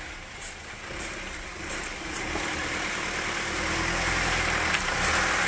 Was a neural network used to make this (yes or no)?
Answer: no